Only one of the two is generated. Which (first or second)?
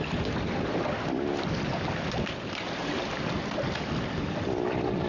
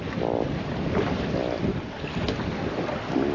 second